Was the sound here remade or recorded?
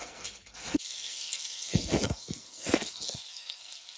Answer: remade